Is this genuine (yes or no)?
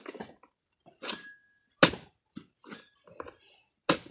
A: yes